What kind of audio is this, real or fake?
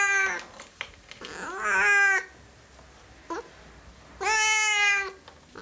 real